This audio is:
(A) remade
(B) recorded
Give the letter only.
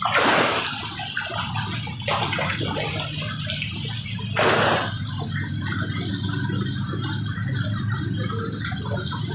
B